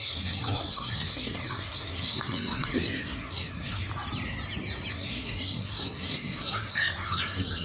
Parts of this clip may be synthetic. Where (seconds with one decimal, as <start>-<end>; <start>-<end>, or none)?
0.0-3.9; 4.9-7.6